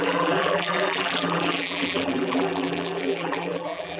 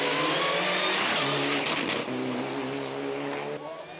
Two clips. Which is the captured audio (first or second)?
second